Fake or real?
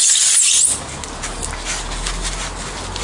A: real